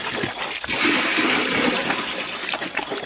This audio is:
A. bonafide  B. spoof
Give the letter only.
A